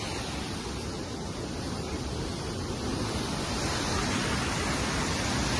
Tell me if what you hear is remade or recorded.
recorded